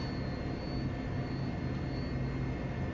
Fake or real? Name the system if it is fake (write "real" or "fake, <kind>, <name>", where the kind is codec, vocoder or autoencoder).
real